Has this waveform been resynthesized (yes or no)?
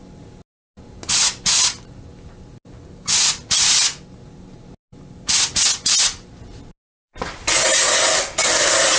no